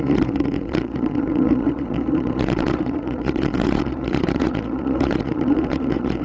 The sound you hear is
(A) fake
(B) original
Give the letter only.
A